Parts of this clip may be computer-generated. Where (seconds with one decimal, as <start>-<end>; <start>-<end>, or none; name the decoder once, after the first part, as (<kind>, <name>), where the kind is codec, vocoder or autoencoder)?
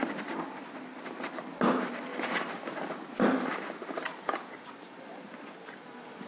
0.0-1.5 (vocoder, BigVGAN v2); 2.1-6.3